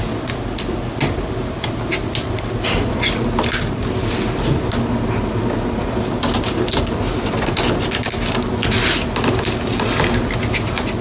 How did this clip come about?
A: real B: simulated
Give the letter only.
A